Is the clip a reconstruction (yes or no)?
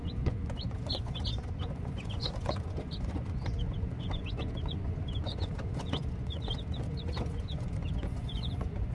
yes